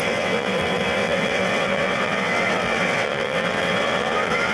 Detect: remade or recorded remade